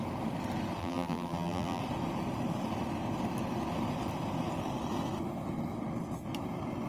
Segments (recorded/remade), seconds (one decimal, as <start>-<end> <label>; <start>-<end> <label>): 0.0-0.8 recorded; 0.8-1.8 remade; 1.8-6.9 recorded